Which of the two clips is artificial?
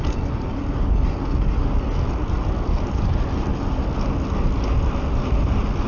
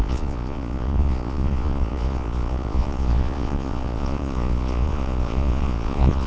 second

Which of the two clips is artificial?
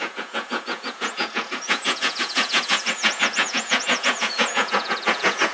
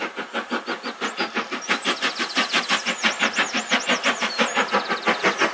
first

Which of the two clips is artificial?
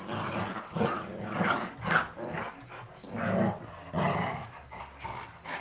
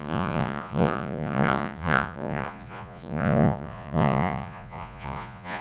second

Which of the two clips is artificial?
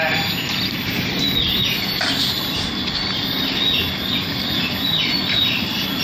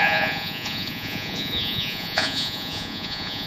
second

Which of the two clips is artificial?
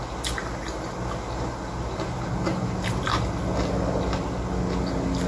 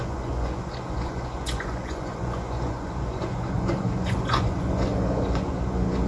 second